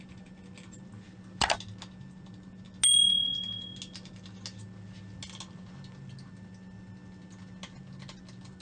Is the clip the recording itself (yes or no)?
yes